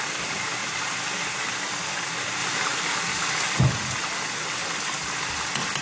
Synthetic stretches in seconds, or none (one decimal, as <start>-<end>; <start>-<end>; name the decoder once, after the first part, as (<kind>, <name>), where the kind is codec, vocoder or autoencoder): none